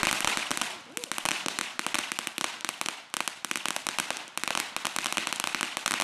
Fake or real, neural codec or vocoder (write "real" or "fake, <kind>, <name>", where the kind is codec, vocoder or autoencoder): real